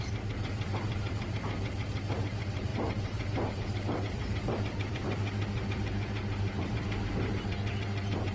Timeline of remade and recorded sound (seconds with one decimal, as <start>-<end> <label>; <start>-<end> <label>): 0.0-5.2 remade; 5.2-8.3 recorded